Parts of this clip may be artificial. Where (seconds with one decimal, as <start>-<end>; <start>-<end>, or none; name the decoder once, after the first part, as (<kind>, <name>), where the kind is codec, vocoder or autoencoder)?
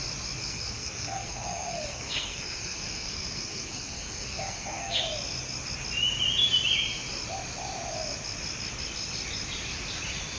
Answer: 0.4-5.0 (codec, SNAC)